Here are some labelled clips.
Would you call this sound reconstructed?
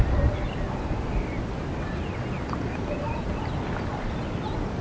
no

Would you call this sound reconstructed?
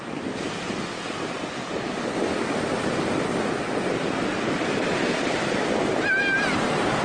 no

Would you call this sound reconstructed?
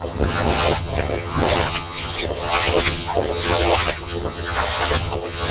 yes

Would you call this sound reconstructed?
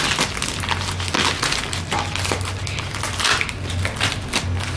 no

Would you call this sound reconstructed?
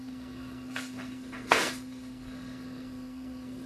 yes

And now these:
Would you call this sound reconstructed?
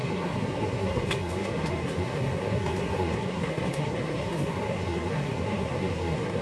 yes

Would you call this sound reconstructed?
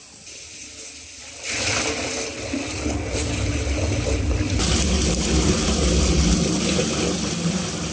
no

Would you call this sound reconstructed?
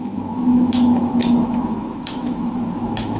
yes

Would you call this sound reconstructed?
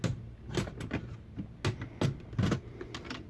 no